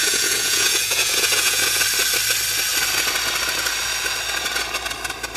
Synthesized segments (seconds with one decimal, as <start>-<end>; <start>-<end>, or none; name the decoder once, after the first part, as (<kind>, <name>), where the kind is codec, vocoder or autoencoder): 0.0-1.8 (vocoder, Vocos)